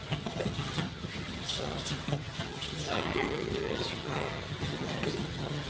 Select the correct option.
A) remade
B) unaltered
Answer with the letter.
A